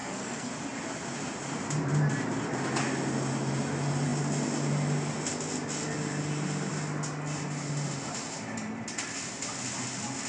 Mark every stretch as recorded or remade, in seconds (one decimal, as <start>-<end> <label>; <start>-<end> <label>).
0.0-0.5 remade; 0.5-10.3 recorded